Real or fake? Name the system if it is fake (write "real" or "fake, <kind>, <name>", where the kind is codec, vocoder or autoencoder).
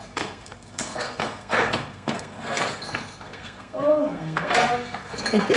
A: fake, codec, SNAC